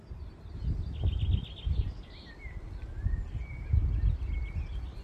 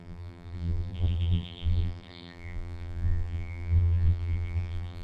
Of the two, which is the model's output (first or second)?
second